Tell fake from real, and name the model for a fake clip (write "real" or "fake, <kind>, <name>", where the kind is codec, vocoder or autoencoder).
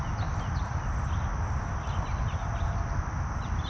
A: real